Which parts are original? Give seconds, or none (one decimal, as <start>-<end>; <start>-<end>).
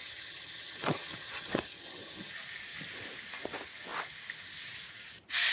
2.3-5.5